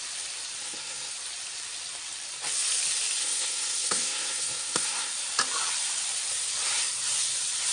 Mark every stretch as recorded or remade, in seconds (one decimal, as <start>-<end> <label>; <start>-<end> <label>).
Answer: 0.0-0.6 recorded; 0.6-1.1 remade; 1.1-3.2 recorded; 3.2-5.1 remade; 5.1-7.7 recorded